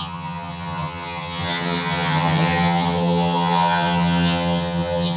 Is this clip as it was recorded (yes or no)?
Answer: no